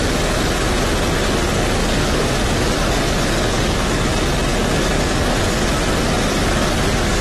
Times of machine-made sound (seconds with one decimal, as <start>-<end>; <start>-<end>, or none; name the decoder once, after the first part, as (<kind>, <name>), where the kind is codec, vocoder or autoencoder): 1.8-4.1 (codec, DAC); 4.6-5.7; 6.3-7.2

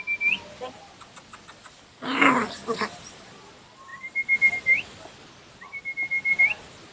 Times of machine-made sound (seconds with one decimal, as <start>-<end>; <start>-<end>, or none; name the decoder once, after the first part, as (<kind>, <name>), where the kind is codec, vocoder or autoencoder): 3.9-4.5 (vocoder, BigVGAN v2)

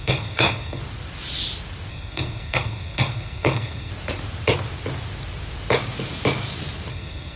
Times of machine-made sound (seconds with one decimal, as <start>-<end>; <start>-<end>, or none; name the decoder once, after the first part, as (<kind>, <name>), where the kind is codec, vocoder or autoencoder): 0.0-0.8 (codec, SNAC); 1.9-3.9; 6.9-7.4

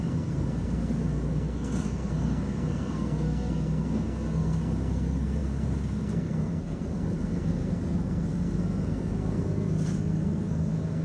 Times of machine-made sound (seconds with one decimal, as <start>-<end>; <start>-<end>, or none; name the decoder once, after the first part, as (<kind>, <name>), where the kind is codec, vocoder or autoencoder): 0.0-11.0 (codec, SNAC)

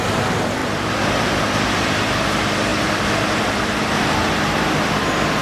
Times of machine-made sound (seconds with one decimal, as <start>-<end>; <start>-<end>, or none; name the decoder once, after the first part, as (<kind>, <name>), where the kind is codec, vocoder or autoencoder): 0.6-1.3 (vocoder, BigVGAN v2)

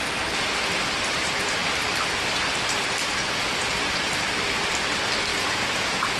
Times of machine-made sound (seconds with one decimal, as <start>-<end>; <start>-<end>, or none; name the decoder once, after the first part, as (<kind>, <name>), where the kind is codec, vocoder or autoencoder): 3.2-4.0 (vocoder, Vocos); 5.3-6.2

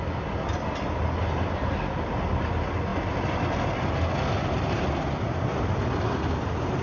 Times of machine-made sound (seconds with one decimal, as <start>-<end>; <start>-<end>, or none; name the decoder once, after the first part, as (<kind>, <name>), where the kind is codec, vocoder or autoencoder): none

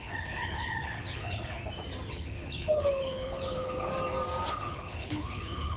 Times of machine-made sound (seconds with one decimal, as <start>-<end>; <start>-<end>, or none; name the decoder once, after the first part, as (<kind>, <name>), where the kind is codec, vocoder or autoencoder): 0.0-1.6 (codec, HILCodec); 2.1-3.9; 4.5-5.8